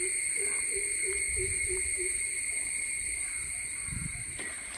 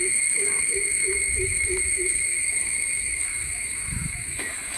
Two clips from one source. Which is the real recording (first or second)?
first